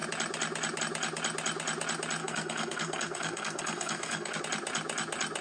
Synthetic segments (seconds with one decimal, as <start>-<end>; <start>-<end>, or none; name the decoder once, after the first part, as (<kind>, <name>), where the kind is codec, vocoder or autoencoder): 2.2-4.4 (codec, SNAC)